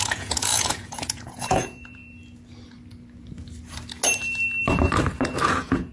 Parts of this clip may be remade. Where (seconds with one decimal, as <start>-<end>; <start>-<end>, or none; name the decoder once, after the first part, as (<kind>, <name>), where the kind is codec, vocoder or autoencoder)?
0.0-2.0 (vocoder, Vocos); 5.5-5.9